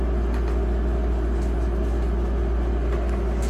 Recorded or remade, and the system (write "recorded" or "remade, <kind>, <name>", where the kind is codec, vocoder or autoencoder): recorded